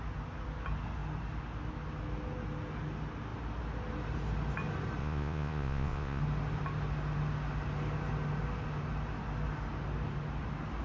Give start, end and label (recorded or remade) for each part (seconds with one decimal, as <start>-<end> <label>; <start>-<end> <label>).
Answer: 0.0-5.0 recorded; 5.0-6.2 remade; 6.2-10.8 recorded